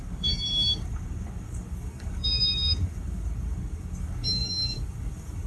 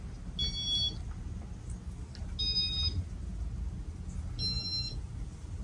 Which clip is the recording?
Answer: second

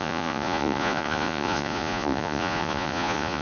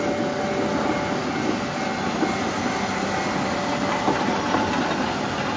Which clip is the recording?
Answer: second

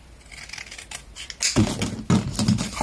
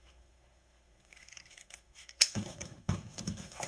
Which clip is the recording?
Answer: first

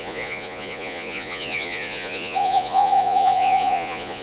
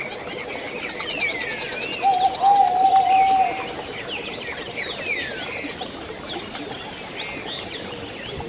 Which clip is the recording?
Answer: second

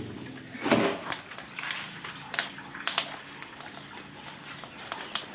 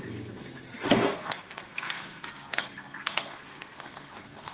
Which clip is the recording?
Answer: first